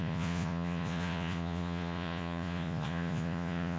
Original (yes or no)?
no